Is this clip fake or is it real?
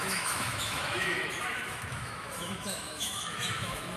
fake